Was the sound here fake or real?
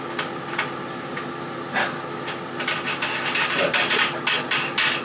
real